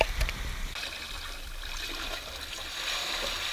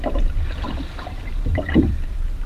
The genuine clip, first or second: first